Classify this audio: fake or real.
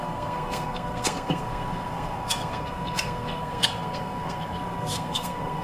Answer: fake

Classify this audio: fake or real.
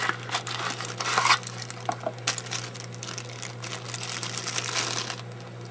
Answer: real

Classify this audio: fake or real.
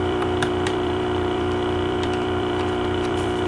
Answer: fake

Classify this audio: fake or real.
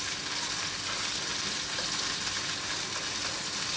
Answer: real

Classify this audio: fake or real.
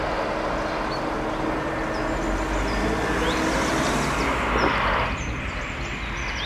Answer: real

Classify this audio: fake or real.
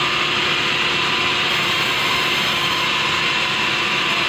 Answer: real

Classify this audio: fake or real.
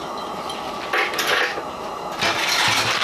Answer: real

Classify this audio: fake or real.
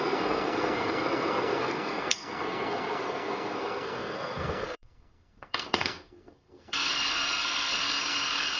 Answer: fake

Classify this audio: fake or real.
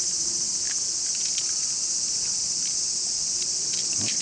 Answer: real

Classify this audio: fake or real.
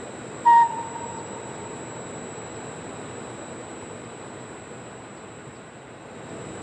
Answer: fake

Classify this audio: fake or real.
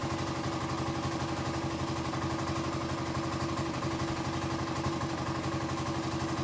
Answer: real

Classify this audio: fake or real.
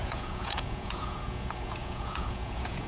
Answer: fake